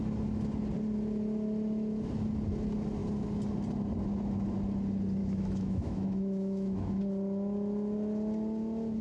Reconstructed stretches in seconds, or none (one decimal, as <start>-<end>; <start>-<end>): 5.2-7.0